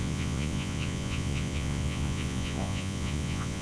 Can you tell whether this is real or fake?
fake